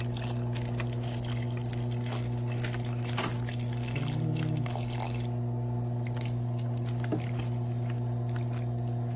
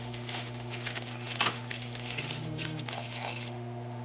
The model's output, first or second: second